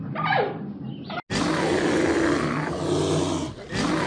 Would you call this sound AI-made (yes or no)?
no